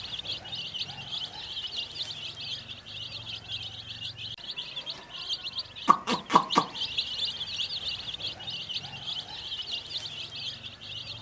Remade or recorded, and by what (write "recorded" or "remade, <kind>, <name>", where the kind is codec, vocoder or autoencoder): recorded